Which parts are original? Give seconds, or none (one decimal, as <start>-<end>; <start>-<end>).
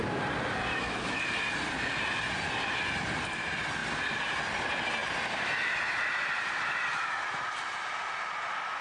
0.0-0.7; 1.2-8.8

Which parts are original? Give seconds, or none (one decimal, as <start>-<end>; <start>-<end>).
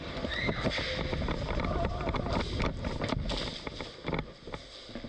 0.0-5.1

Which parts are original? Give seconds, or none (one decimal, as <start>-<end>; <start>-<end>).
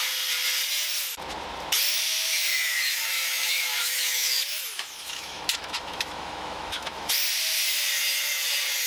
0.0-2.5; 7.1-8.9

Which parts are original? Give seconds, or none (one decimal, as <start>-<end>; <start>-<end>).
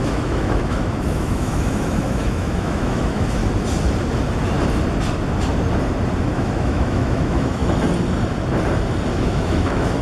3.4-6.2; 7.6-9.1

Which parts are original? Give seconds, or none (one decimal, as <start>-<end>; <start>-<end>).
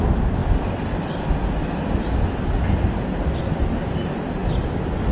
0.0-5.1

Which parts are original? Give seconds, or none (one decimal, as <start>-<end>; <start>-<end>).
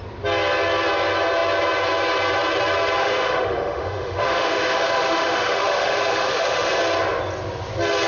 0.0-3.0; 6.8-8.1